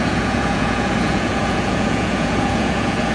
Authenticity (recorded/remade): remade